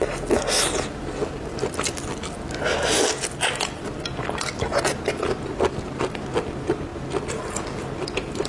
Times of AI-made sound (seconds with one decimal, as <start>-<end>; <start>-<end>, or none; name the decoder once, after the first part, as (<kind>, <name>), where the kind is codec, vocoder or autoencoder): none